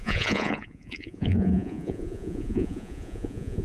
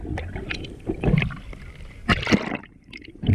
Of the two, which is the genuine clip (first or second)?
second